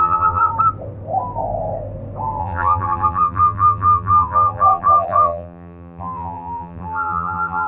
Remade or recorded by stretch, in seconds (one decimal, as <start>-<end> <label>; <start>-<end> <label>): 0.0-0.5 remade; 0.5-2.4 recorded; 2.4-7.7 remade